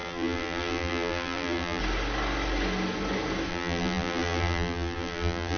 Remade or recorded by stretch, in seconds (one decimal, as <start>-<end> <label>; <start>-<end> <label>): 0.0-1.8 remade; 1.8-3.5 recorded; 3.5-5.6 remade